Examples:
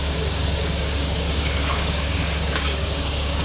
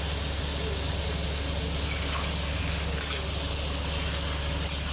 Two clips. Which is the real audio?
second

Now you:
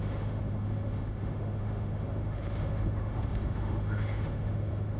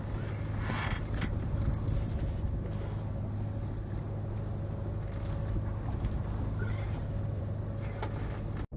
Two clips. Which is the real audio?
second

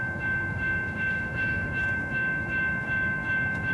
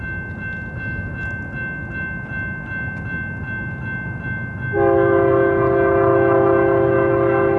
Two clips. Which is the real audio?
second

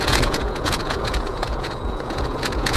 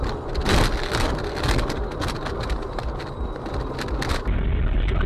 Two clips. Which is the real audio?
second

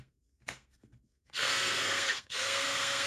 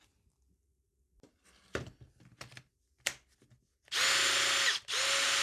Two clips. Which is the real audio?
second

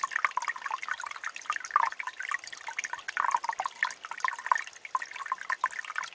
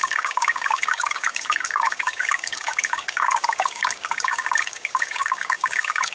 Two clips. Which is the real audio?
first